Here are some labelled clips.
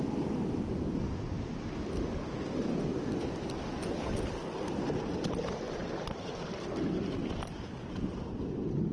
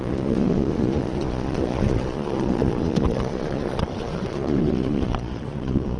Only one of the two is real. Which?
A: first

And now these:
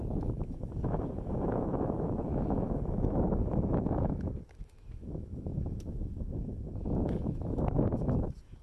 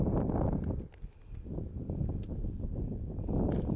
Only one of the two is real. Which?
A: second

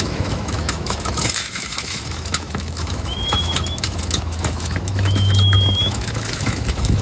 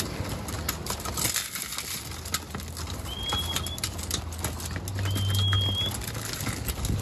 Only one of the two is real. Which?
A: second